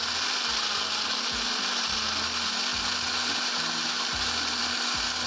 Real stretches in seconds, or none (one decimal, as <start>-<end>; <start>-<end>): 0.0-5.3